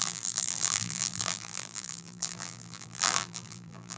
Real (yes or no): no